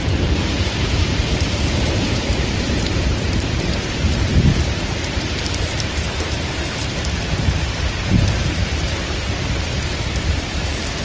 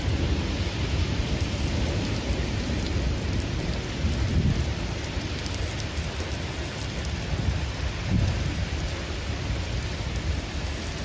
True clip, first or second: second